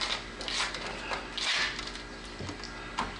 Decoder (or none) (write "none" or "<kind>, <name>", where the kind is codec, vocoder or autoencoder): none